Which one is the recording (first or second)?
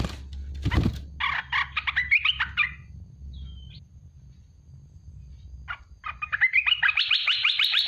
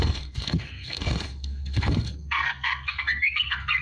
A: first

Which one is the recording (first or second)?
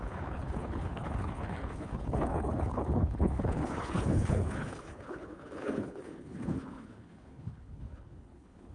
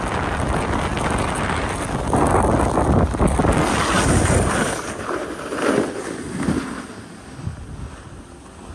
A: second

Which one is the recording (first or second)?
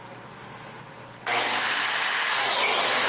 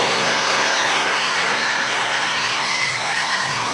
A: first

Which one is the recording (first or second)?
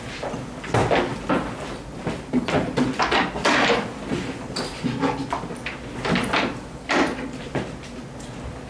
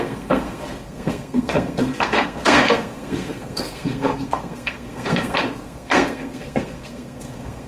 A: first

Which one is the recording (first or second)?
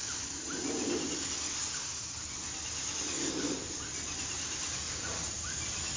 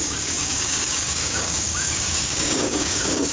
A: first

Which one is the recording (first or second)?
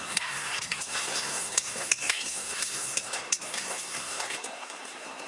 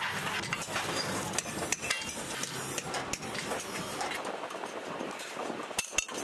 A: second